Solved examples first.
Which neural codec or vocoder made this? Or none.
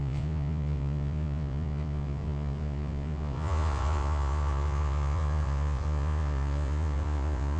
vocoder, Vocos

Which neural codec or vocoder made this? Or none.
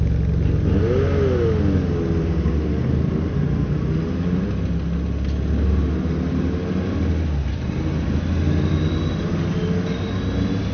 none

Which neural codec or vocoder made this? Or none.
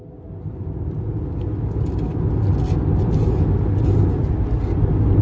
none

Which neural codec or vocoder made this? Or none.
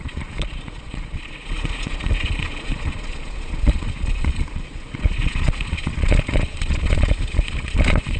vocoder, Vocos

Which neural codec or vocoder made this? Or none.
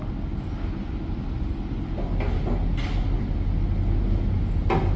none